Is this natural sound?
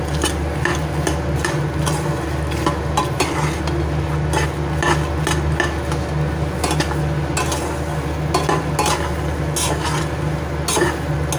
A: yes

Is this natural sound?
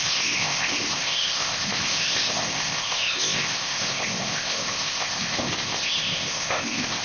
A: no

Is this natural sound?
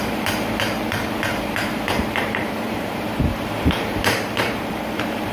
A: no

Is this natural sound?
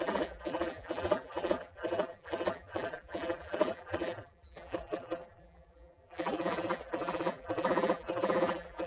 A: no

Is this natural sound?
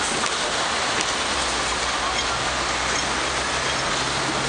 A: yes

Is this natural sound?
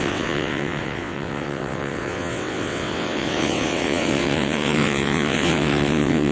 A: no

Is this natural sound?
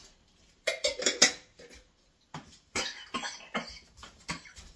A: yes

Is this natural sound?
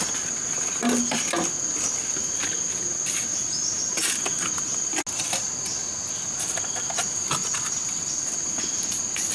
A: yes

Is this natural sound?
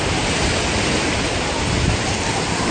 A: yes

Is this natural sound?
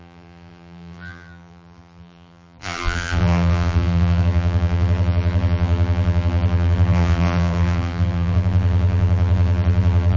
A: no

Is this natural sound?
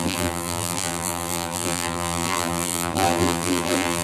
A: no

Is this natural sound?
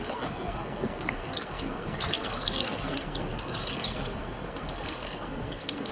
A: no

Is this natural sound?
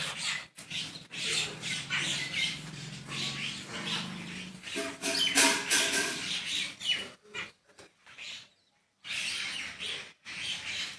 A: no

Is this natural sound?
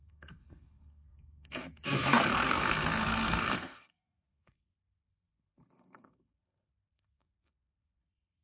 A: no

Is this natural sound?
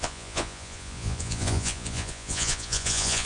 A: no